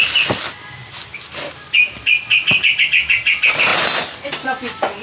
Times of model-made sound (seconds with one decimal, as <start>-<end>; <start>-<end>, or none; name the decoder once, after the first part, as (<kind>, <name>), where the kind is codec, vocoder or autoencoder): none